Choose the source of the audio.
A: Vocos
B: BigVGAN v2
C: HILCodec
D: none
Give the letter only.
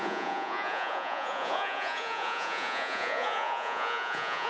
A